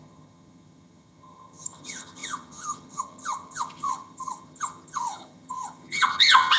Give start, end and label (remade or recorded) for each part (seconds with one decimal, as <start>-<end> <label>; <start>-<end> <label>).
0.0-6.6 remade